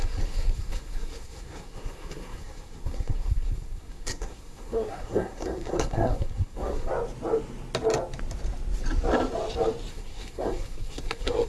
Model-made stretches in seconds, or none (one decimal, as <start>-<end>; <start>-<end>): 0.0-6.9; 9.9-11.5